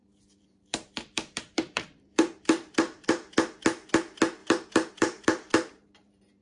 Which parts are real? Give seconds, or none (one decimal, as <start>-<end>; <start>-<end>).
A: 3.3-4.4